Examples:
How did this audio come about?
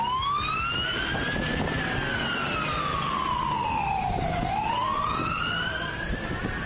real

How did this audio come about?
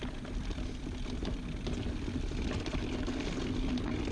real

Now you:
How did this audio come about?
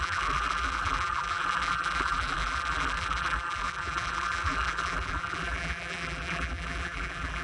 fake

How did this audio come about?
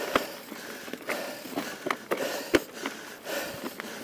real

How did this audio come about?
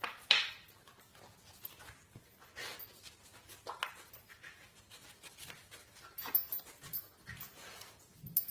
real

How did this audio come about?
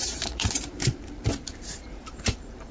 fake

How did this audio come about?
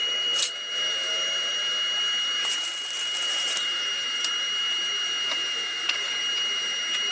real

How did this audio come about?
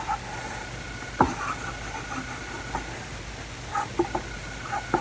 real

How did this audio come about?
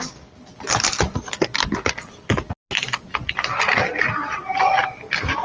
real